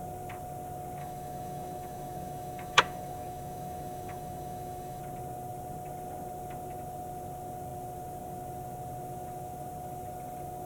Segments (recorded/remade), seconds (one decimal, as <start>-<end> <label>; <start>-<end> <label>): 0.0-1.0 recorded; 1.0-5.0 remade; 5.0-10.7 recorded